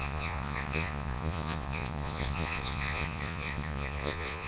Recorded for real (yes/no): no